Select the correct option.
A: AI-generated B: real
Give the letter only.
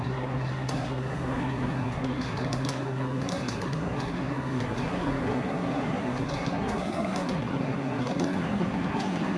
A